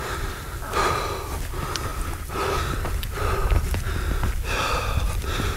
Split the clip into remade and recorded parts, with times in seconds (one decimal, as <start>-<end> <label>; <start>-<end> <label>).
0.0-5.6 recorded